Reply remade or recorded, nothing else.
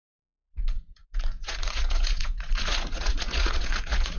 remade